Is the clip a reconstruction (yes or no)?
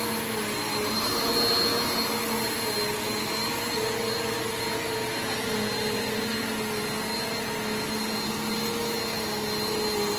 no